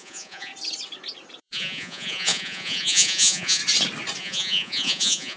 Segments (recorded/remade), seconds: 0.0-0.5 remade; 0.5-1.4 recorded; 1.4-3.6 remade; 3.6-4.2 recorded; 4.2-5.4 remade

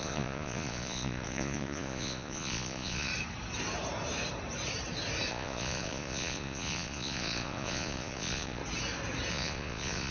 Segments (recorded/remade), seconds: 0.0-3.1 remade; 3.1-5.3 recorded; 5.3-8.6 remade; 8.6-9.3 recorded; 9.3-10.1 remade